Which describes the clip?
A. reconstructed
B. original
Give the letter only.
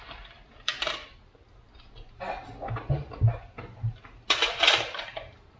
B